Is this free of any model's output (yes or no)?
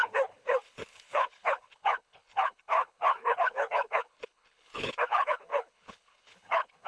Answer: no